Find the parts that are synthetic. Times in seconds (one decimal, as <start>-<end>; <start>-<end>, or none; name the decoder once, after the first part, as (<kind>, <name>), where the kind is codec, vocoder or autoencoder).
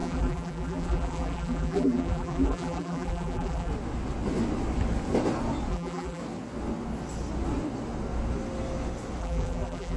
0.0-3.7 (vocoder, BigVGAN v2); 5.7-6.2; 9.2-10.0